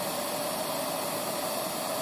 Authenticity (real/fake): real